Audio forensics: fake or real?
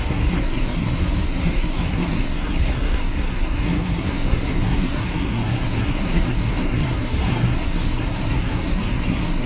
fake